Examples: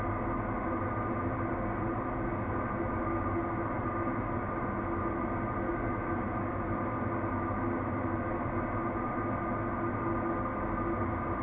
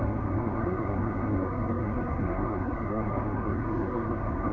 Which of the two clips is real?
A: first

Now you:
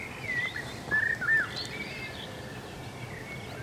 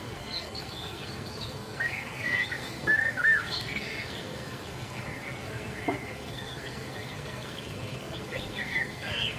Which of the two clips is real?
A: first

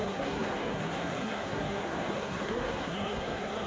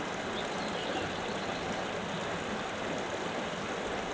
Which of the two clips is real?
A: second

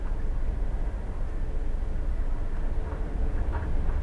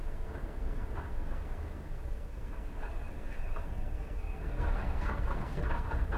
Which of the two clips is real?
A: first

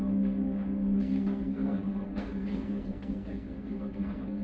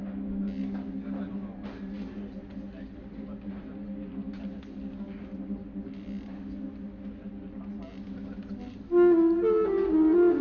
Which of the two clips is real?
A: second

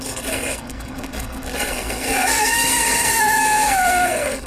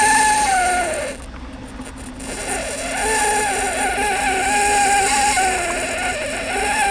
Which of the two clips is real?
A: second